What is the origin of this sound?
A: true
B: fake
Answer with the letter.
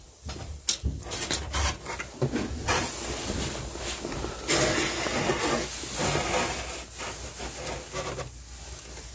A